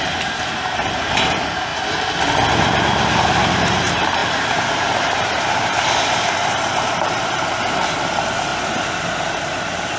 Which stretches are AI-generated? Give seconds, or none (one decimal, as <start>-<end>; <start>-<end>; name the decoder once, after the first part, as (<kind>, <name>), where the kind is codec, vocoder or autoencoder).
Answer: 0.0-1.7 (vocoder, BigVGAN v2); 3.2-8.5; 9.3-10.0